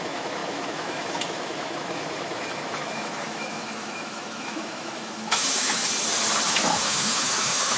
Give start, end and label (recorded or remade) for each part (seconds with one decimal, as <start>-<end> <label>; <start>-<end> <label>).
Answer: 0.0-5.8 remade; 5.8-6.5 recorded; 6.5-7.8 remade